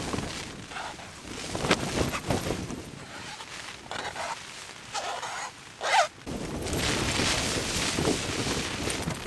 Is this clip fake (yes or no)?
no